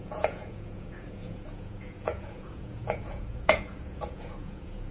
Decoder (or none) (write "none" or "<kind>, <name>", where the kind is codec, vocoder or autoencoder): vocoder, Vocos